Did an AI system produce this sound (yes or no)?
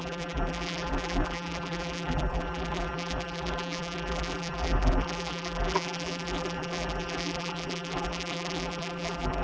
yes